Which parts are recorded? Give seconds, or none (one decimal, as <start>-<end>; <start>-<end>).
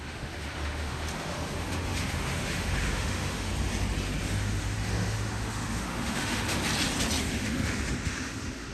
3.5-4.2; 6.6-7.2